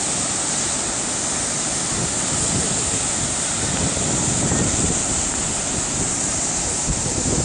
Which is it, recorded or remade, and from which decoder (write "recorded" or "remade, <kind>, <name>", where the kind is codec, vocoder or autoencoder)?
recorded